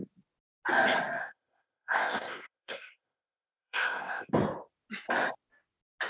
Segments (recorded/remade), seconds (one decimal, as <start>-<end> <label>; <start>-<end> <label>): 0.0-1.2 recorded; 1.2-4.3 remade; 4.3-6.1 recorded